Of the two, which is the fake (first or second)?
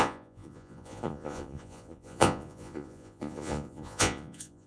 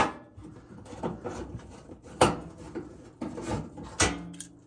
first